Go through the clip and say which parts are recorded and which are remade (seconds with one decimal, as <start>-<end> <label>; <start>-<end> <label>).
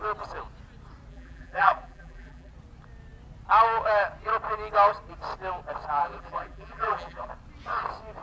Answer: 0.0-1.1 recorded; 1.1-2.5 remade; 2.5-6.0 recorded; 6.0-7.3 remade; 7.3-8.2 recorded